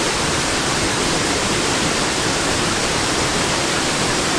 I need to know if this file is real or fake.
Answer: fake